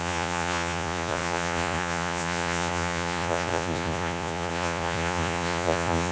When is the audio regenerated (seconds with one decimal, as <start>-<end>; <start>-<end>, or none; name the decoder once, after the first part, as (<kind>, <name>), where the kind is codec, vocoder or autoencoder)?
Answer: 0.0-6.1 (vocoder, Vocos)